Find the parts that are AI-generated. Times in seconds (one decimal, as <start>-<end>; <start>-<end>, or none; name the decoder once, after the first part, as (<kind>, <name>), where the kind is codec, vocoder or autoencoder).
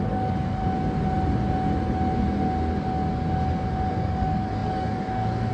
0.0-0.6 (codec, DAC); 3.9-5.5